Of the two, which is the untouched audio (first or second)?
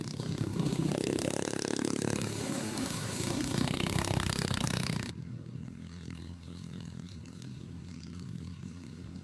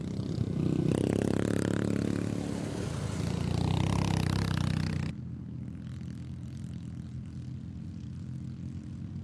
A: second